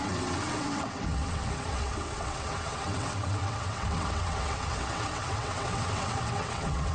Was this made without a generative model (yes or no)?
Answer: no